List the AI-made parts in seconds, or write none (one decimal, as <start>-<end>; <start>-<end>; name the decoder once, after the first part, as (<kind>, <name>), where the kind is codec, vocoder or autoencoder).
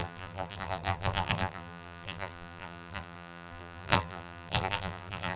0.0-5.4 (vocoder, BigVGAN v2)